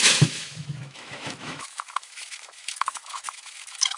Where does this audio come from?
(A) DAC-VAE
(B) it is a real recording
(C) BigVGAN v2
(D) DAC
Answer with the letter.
A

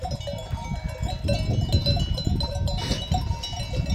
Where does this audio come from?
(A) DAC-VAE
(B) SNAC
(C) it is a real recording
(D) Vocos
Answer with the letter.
C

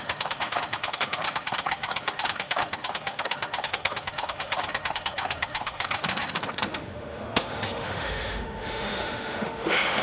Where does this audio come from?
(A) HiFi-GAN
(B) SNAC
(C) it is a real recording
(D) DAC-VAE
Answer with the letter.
D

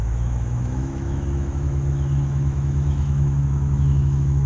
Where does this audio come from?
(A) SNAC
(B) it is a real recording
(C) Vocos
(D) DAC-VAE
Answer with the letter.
D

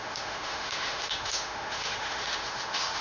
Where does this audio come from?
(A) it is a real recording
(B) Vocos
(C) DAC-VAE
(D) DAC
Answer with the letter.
C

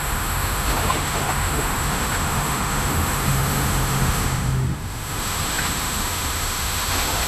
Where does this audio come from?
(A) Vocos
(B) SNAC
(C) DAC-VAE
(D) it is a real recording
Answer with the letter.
C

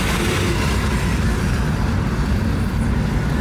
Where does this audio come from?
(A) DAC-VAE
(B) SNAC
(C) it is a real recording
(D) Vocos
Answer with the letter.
C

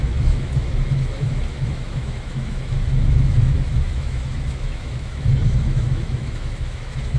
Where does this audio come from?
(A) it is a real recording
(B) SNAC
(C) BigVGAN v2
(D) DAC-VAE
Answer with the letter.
D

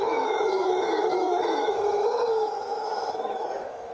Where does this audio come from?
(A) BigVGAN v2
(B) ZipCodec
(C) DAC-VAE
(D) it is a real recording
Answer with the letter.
C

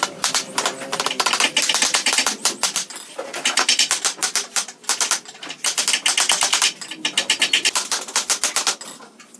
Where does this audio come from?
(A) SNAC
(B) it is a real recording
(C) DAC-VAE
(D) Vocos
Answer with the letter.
B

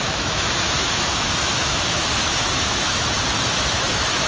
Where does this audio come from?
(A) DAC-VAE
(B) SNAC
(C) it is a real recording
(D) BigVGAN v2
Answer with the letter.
A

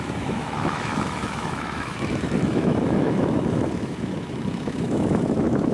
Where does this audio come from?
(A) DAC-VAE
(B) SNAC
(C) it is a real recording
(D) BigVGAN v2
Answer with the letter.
A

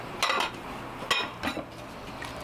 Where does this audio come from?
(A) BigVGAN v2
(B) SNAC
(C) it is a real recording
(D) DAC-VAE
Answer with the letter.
C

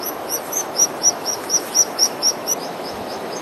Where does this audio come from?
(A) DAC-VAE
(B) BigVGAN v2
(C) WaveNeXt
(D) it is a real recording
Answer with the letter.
A